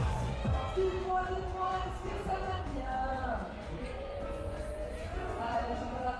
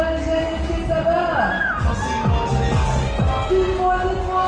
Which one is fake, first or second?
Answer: first